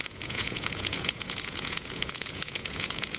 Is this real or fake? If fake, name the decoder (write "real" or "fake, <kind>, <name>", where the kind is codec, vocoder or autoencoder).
fake, vocoder, Vocos